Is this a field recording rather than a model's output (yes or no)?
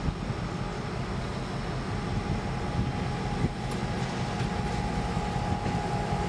yes